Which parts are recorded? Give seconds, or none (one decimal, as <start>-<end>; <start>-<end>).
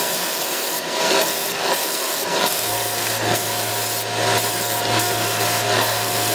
3.7-4.5